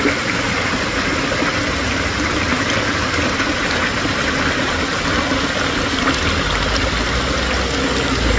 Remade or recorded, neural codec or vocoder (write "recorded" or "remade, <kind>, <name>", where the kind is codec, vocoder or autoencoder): recorded